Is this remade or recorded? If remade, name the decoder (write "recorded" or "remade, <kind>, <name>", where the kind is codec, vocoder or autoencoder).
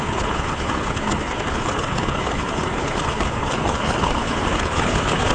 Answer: remade, codec, HILCodec